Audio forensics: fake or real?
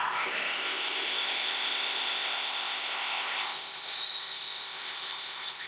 fake